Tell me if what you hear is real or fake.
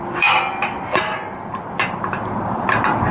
real